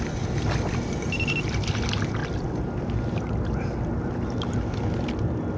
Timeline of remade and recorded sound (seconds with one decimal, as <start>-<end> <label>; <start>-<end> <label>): 0.0-5.6 recorded